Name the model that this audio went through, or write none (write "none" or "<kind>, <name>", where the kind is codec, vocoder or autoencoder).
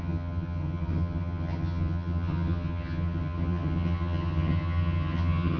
vocoder, HiFi-GAN